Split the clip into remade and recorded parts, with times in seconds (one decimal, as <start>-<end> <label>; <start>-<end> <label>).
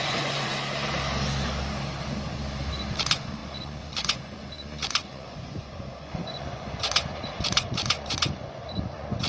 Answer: 0.0-0.5 remade; 0.5-3.0 recorded; 3.0-9.3 remade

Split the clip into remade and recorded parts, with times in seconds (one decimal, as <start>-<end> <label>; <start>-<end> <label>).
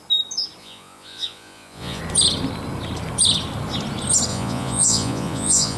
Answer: 0.0-0.6 recorded; 0.6-2.0 remade; 2.0-4.3 recorded; 4.3-5.8 remade